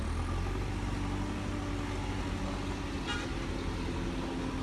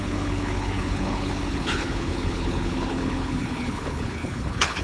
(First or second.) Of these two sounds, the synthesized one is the second